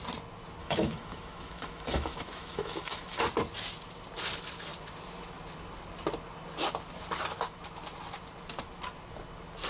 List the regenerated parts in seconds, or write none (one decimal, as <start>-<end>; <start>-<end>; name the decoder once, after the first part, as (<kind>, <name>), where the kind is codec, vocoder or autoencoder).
0.6-3.2 (autoencoder, DAC-VAE)